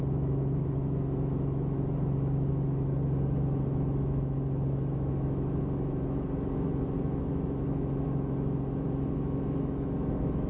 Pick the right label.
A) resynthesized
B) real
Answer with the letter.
A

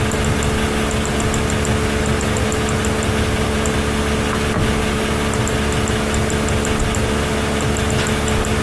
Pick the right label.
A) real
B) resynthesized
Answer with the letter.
A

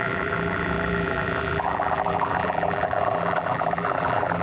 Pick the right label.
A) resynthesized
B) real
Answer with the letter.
A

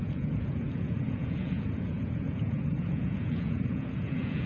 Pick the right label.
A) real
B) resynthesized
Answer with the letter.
B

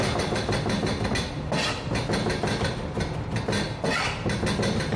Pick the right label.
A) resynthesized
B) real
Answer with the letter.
B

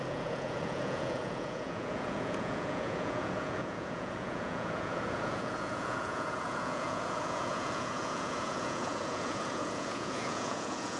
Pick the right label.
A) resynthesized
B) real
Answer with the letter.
A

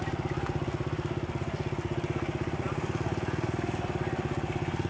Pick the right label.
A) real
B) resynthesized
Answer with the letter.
A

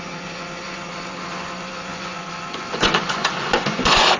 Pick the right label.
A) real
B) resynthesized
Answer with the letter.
B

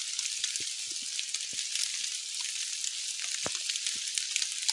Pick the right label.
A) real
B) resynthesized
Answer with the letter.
A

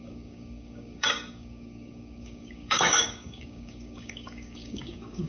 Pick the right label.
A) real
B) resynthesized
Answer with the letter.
B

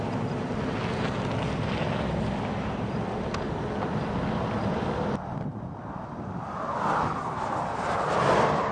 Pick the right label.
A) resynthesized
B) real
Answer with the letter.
B